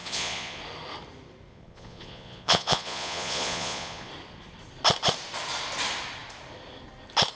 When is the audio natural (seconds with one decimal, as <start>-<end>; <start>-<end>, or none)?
0.6-1.5; 4.1-7.4